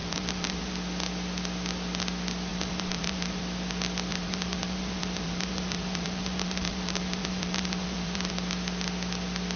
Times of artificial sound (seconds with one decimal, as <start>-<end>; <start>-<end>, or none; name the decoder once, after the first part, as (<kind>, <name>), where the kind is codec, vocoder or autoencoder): 0.0-0.7 (vocoder, BigVGAN v2); 2.5-3.4; 4.1-8.3

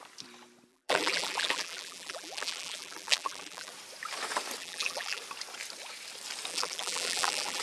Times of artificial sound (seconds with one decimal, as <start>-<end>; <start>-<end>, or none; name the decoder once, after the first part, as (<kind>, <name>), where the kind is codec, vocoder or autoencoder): 0.7-3.7 (vocoder, BigVGAN v2); 4.6-5.2; 6.5-7.6

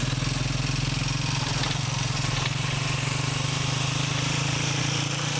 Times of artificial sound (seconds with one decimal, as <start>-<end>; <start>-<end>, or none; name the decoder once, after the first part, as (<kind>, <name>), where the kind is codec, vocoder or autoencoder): 1.6-4.8 (vocoder, BigVGAN v2)